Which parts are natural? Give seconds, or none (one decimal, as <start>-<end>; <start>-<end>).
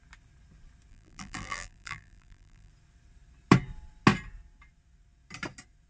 0.0-0.9; 2.7-5.9